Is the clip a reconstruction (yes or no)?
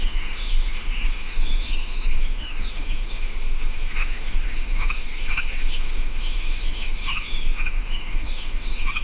yes